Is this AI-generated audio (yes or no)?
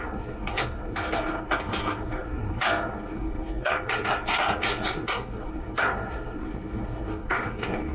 yes